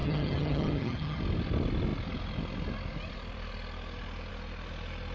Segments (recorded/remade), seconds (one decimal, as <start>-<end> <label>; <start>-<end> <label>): 0.0-1.2 remade; 1.2-5.1 recorded